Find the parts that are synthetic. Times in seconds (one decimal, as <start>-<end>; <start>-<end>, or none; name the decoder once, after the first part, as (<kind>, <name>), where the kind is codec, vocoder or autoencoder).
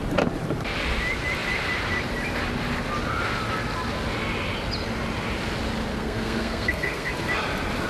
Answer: 5.9-7.1 (codec, SNAC)